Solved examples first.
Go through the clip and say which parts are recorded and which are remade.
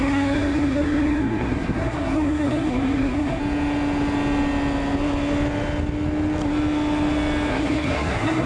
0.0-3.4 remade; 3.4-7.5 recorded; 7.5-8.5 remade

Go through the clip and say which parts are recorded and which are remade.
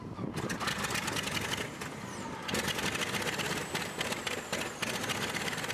0.0-5.7 recorded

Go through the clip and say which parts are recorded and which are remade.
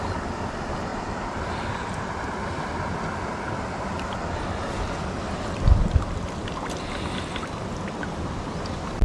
0.0-9.0 recorded